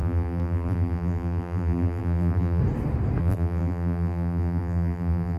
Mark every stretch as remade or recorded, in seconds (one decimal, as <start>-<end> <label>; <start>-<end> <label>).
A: 0.0-2.6 remade; 2.6-3.2 recorded; 3.2-5.4 remade